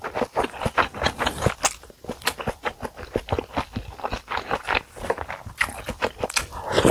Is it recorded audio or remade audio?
recorded